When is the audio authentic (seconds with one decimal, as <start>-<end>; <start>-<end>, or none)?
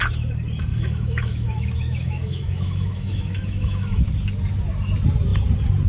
0.0-0.7; 4.0-5.9